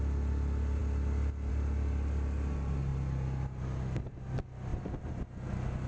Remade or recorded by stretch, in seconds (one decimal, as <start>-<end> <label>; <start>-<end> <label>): 0.0-5.9 recorded